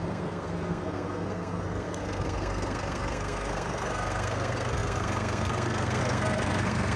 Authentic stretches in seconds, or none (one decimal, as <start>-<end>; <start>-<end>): none